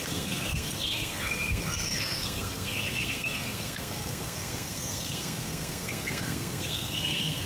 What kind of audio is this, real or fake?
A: fake